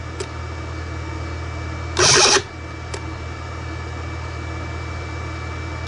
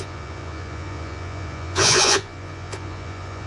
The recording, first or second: first